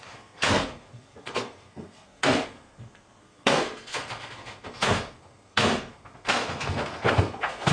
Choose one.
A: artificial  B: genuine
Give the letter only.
A